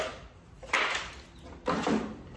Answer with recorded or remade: recorded